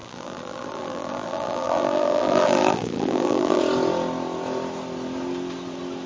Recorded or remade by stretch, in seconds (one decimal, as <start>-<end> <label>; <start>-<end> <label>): 0.0-3.6 remade; 3.6-6.1 recorded